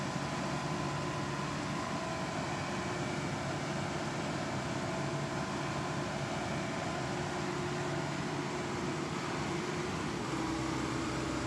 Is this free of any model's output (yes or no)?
yes